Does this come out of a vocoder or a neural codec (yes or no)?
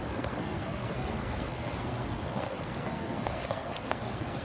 yes